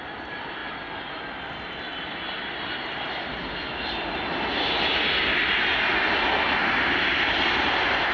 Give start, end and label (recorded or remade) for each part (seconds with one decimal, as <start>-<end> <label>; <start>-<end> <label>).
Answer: 0.0-8.1 recorded